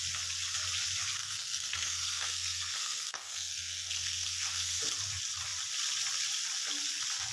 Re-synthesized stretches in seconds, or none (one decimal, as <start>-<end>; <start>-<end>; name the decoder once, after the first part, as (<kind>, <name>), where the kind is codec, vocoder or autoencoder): 1.2-4.8 (codec, SNAC)